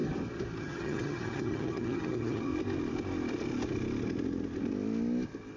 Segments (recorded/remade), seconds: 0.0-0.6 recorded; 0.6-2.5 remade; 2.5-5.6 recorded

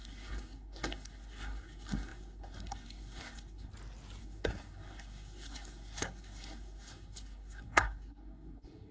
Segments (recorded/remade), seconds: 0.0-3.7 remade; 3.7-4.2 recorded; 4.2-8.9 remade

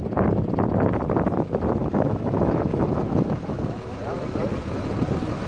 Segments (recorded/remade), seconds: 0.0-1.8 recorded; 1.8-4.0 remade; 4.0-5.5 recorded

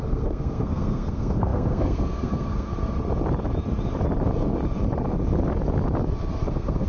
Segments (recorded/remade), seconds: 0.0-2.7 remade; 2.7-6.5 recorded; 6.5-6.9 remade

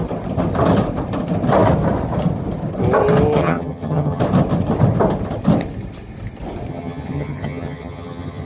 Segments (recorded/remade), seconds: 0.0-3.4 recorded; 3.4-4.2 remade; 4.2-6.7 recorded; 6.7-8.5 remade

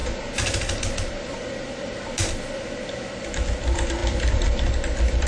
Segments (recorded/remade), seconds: 0.0-5.3 remade